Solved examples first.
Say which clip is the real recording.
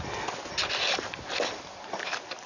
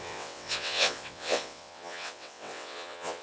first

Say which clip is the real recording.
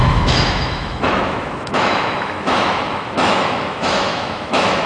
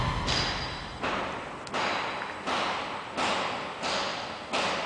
second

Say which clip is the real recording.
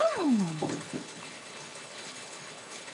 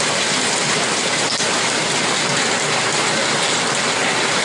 second